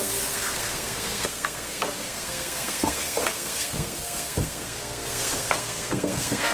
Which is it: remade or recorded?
remade